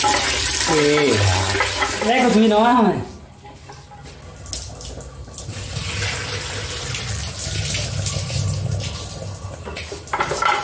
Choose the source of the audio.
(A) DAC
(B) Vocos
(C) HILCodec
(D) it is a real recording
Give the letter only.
D